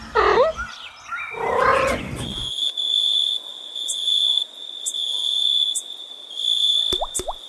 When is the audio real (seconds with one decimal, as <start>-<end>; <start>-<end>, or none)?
0.0-1.7; 5.9-7.5